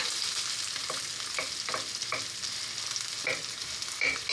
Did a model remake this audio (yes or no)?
no